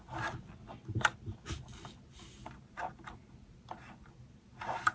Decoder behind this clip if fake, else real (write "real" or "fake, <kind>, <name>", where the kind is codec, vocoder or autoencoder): real